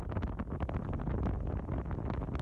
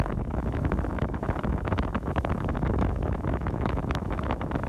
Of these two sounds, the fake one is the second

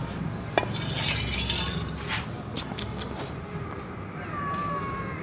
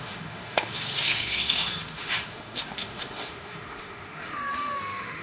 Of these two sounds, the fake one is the second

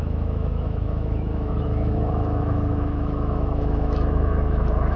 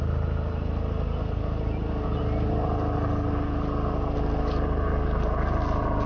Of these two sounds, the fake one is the first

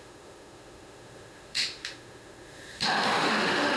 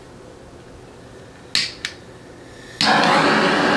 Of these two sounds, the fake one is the first